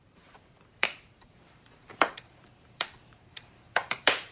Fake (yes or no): yes